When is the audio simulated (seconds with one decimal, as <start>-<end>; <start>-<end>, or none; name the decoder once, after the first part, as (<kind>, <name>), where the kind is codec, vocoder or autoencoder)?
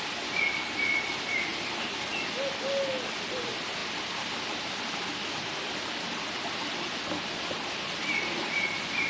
none